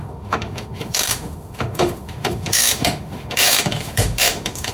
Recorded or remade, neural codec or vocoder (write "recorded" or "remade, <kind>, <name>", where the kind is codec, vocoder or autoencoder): remade, autoencoder, DAC-VAE